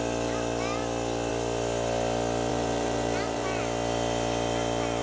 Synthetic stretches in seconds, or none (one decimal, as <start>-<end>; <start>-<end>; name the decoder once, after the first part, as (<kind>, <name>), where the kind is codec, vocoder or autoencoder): 2.5-3.6 (vocoder, BigVGAN v2)